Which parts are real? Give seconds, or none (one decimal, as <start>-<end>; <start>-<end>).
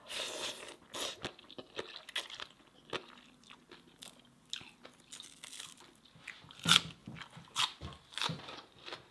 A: 0.0-9.1